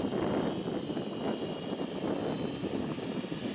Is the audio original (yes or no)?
yes